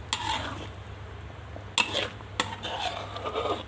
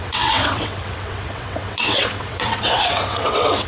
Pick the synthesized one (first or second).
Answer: second